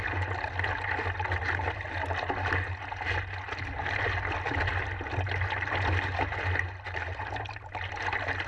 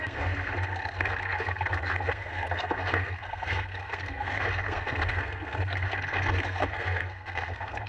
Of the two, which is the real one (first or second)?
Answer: first